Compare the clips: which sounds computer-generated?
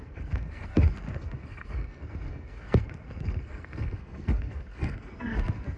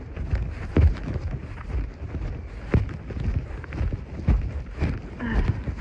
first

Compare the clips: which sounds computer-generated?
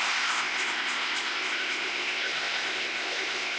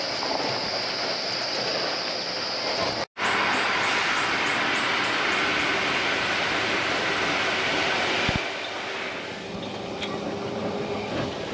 first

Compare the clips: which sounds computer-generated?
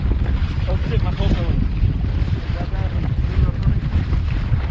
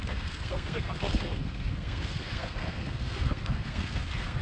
second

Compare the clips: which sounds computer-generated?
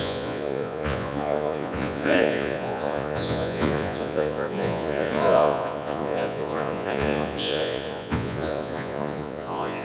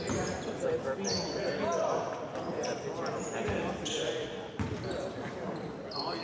first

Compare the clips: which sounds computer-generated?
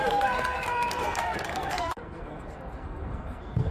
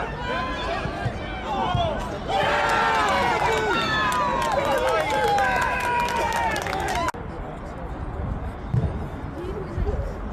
first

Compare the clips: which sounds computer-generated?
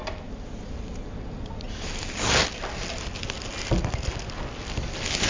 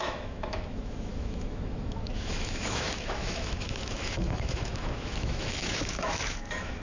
second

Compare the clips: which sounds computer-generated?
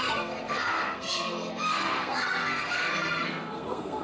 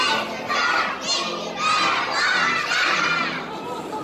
first